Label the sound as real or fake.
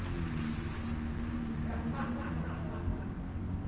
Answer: real